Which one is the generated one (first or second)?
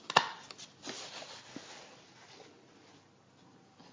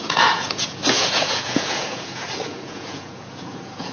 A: second